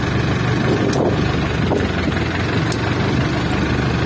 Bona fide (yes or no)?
yes